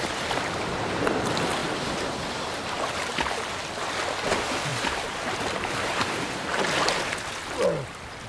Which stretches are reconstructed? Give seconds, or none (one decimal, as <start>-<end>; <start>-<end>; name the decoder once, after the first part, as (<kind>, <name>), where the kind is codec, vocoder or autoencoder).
1.6-3.7 (vocoder, BigVGAN v2); 4.7-6.5